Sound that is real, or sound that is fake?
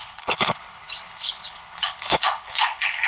fake